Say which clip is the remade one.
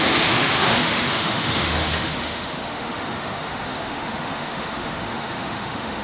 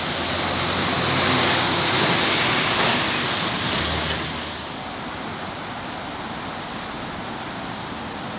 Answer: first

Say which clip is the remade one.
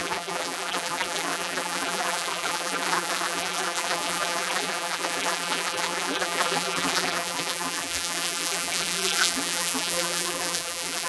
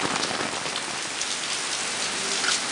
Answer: first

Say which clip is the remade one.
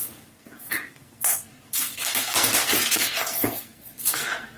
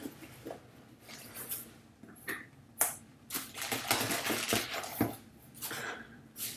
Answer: first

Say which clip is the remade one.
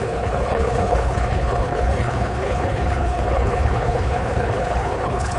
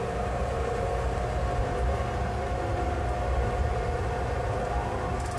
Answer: first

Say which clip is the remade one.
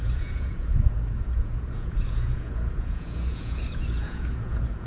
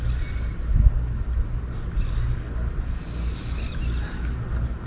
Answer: first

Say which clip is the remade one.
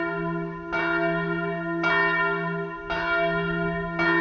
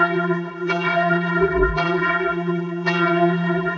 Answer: second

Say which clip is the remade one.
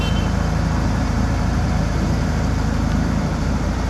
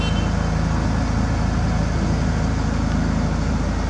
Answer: first